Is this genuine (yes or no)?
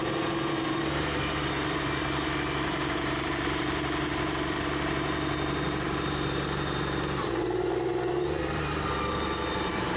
no